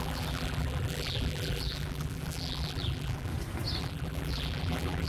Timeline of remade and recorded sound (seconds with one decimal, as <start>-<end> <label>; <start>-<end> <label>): 0.0-3.3 remade; 3.3-3.8 recorded; 3.8-5.1 remade